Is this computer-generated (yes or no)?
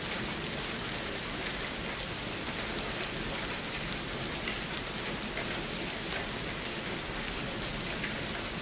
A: no